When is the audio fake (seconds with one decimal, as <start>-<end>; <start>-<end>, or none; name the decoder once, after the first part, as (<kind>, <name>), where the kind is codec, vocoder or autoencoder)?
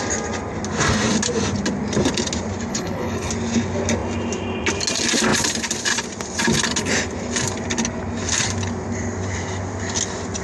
2.7-3.3 (codec, HILCodec)